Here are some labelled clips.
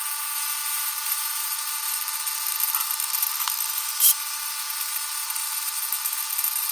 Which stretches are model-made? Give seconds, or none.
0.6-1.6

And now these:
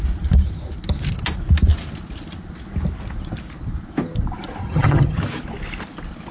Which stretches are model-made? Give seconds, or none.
4.6-5.2

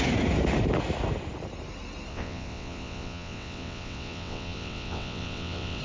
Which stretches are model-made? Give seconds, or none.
2.1-5.8

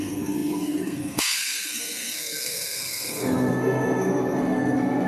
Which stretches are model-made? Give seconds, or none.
0.0-5.1

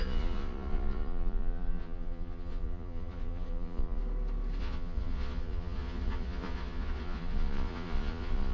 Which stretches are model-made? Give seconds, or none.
0.0-4.0; 4.6-8.5

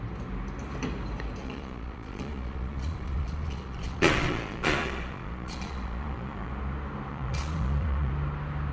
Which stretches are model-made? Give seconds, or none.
1.4-6.5; 7.1-8.1

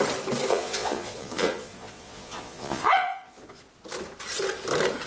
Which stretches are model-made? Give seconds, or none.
0.5-3.6